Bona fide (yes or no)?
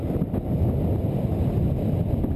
yes